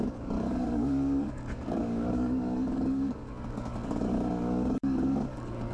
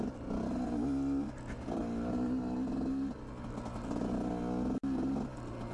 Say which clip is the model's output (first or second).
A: first